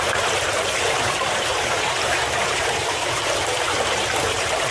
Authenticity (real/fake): fake